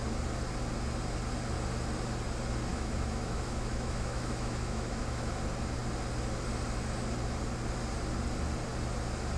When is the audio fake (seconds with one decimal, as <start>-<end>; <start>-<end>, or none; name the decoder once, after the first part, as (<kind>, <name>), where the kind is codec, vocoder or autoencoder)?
2.7-5.3 (autoencoder, DAC-VAE)

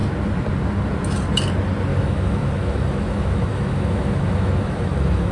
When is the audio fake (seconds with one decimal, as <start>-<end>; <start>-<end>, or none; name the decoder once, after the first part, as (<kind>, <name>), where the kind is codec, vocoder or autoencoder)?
1.9-5.3 (autoencoder, DAC-VAE)

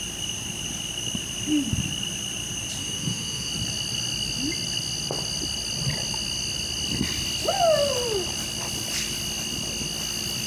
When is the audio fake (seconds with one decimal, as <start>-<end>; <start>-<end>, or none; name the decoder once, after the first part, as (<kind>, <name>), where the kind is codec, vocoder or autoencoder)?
2.8-3.5 (autoencoder, DAC-VAE)

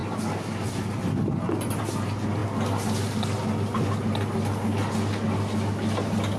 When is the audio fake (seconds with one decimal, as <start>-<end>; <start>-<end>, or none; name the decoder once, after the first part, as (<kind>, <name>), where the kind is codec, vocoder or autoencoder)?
none